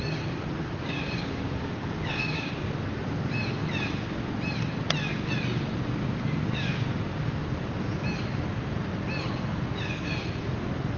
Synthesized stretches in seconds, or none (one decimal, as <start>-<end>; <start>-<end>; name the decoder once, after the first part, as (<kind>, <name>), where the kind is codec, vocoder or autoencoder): 0.8-2.7 (codec, DAC); 6.0-7.3